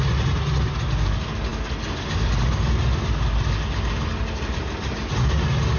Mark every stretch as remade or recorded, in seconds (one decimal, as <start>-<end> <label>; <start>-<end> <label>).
0.0-5.8 recorded